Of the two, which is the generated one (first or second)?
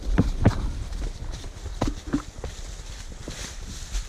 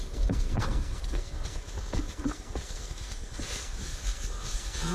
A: second